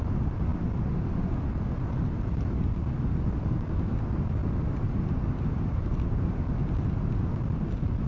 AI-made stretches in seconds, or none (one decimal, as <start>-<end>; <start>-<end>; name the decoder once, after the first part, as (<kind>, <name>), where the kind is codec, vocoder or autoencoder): 4.4-6.4 (vocoder, BigVGAN v2)